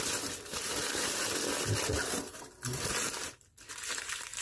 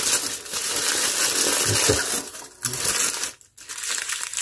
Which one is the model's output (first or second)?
first